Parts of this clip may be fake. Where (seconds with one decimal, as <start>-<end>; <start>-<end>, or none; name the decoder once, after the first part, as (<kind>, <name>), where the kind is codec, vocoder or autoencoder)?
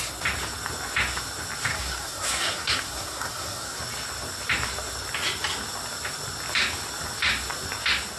1.7-3.8 (codec, SNAC)